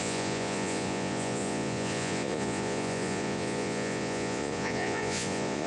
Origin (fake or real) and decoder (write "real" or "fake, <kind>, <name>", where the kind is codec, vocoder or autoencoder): fake, vocoder, Vocos